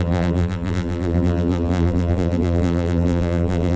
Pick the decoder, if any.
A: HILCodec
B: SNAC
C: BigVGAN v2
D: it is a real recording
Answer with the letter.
C